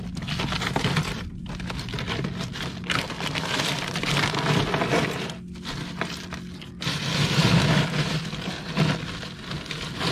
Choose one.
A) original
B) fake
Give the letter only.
A